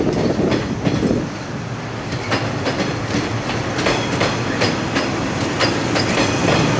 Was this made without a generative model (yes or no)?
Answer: yes